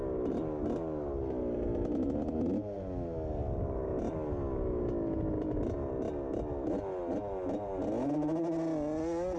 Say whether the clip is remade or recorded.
recorded